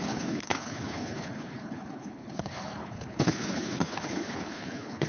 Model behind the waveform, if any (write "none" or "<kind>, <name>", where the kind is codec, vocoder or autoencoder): codec, HILCodec